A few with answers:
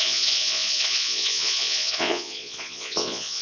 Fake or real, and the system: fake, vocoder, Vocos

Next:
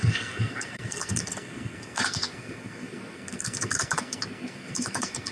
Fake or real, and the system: fake, codec, SNAC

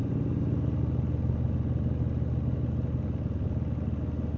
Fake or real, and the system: real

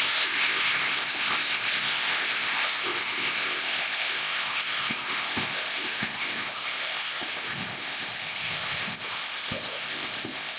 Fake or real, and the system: fake, codec, ZipCodec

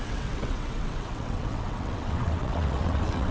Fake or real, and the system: fake, vocoder, WaveNeXt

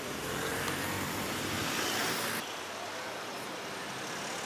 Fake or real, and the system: real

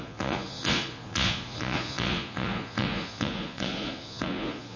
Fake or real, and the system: fake, vocoder, Vocos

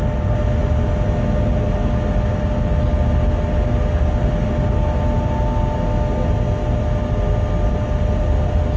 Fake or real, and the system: real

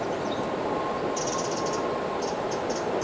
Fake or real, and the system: real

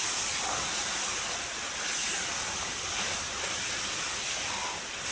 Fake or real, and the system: real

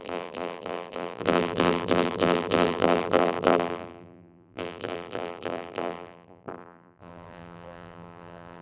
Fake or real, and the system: fake, vocoder, BigVGAN v2